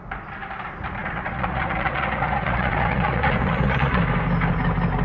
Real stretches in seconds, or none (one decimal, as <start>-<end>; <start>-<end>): 0.0-1.0; 4.0-5.0